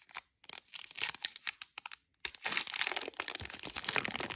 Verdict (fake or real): real